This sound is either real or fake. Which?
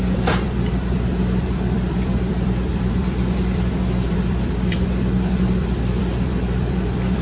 fake